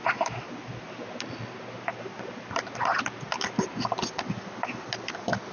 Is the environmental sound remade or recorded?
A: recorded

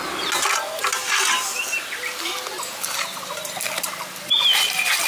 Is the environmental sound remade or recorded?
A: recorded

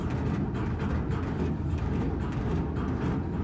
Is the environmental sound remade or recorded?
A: recorded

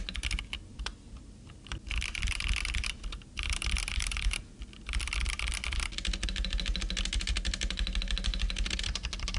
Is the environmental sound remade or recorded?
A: recorded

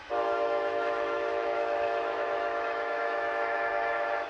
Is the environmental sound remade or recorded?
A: remade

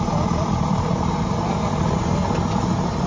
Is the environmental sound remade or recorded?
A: recorded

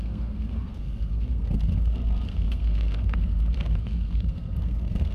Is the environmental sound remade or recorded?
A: remade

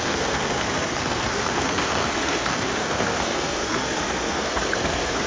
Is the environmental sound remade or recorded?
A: remade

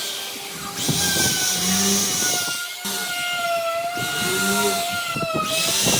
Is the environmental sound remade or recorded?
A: recorded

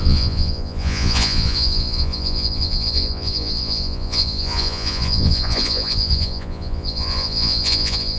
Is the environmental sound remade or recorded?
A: remade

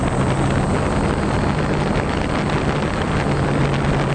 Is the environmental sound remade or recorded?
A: recorded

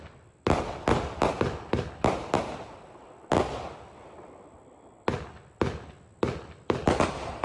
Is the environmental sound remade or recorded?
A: recorded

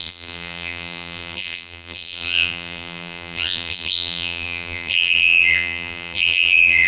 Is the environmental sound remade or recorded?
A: remade